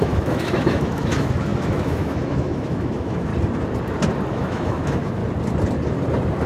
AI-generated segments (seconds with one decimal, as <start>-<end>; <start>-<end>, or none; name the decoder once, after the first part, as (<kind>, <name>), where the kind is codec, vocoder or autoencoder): 0.0-3.3 (autoencoder, DAC-VAE); 4.3-5.2

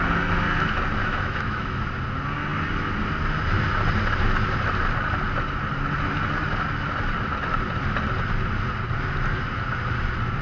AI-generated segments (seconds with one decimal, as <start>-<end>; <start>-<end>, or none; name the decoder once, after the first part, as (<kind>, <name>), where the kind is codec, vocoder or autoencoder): 1.0-1.8 (autoencoder, DAC-VAE)